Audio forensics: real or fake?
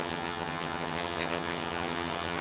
fake